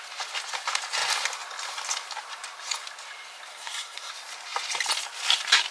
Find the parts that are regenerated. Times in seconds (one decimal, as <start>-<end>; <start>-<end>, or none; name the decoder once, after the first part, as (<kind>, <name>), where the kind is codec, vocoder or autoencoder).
3.5-4.1 (codec, SNAC)